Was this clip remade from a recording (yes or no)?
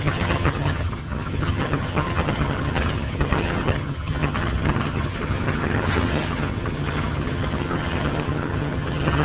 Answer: yes